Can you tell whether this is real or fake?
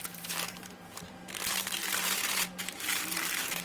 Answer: fake